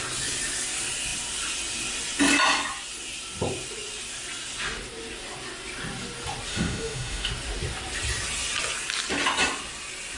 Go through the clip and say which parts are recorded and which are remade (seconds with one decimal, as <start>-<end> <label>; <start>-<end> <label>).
0.0-6.5 recorded; 6.5-7.3 remade; 7.3-10.2 recorded